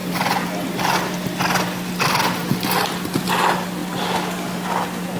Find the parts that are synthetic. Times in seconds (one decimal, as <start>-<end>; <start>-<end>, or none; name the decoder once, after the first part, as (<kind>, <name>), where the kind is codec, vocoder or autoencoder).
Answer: none